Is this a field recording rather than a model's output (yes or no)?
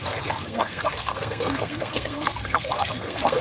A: no